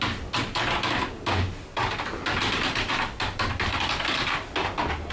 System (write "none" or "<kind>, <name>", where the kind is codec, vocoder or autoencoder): none